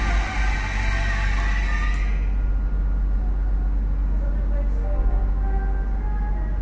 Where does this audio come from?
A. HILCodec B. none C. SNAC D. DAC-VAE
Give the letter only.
B